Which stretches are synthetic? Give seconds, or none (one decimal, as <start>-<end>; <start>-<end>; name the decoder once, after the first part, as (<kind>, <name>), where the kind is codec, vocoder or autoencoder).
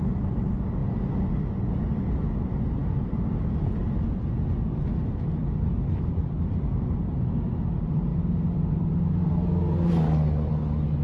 none